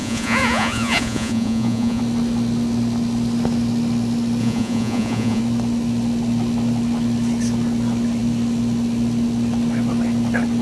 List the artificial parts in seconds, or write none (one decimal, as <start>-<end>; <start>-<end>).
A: 0.0-2.0; 4.4-5.4